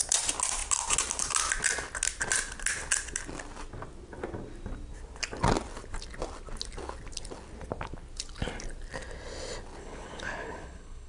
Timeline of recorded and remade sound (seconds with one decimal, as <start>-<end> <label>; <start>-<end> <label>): 0.0-9.8 recorded; 9.8-11.1 remade